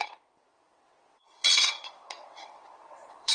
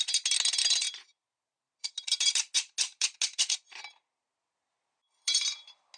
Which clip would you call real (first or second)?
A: second